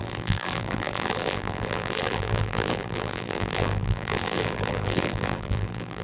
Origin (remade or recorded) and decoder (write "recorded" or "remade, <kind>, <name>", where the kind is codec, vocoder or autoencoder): remade, vocoder, BigVGAN v2